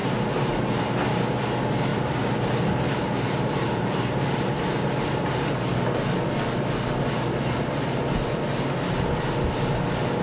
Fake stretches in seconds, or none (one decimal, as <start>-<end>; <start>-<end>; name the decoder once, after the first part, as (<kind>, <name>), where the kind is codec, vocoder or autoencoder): 1.9-5.5 (vocoder, BigVGAN v2)